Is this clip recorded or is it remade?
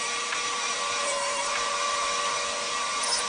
remade